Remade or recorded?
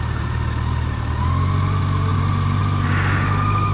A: recorded